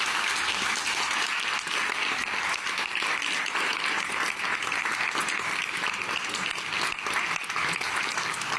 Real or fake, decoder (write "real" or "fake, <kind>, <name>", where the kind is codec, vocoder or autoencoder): real